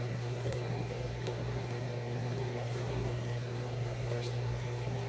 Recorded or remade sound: remade